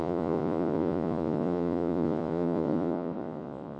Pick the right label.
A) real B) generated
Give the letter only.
B